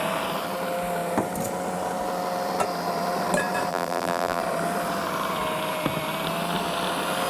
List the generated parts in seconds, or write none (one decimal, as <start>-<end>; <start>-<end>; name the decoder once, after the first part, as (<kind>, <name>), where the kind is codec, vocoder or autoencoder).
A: 3.7-4.4 (vocoder, BigVGAN v2)